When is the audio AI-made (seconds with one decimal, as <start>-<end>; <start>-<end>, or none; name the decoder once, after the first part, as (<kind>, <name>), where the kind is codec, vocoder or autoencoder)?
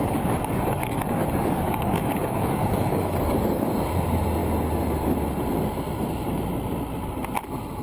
0.0-3.7 (codec, DAC)